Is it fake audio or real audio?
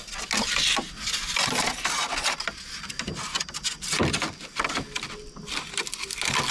real